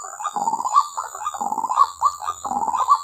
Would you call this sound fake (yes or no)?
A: yes